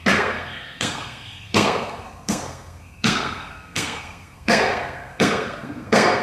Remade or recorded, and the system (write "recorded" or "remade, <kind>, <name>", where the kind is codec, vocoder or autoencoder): remade, codec, SNAC